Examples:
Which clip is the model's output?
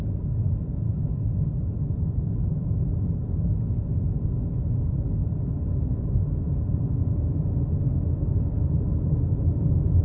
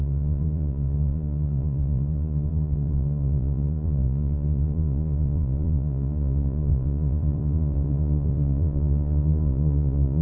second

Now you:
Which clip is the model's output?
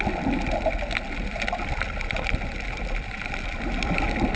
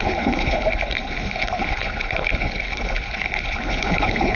second